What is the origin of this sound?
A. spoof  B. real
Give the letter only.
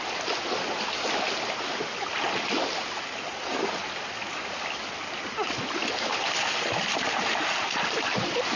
B